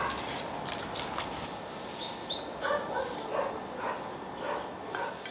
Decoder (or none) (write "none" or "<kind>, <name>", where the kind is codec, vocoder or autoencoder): none